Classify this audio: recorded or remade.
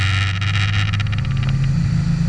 recorded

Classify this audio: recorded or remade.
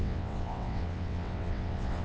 remade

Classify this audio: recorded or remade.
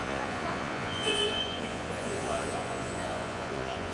remade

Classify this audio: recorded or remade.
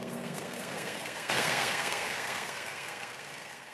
remade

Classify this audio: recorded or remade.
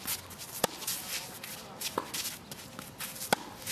recorded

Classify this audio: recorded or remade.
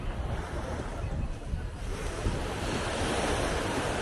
remade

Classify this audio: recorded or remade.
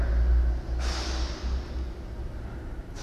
recorded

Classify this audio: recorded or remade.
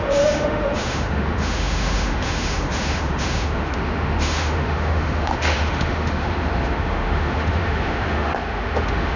remade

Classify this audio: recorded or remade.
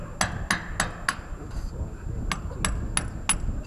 recorded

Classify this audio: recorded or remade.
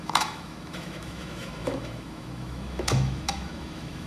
remade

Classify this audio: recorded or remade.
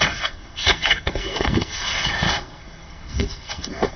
remade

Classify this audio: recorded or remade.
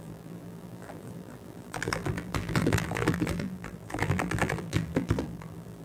remade